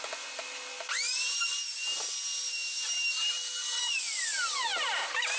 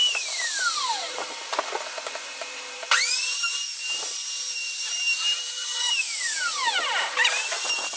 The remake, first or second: second